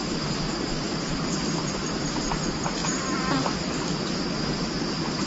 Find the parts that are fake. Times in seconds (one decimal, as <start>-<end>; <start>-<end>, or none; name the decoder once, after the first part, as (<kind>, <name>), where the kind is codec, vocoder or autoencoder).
none